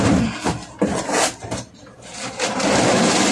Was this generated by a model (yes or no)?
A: no